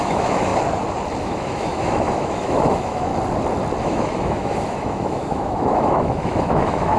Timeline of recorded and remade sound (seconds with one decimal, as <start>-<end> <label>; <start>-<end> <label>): 0.0-0.5 remade; 0.5-1.2 recorded; 1.2-3.1 remade; 3.1-3.8 recorded; 3.8-7.0 remade